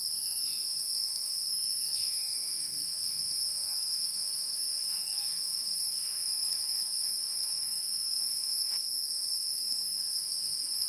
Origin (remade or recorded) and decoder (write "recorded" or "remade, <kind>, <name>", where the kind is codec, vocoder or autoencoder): remade, codec, SNAC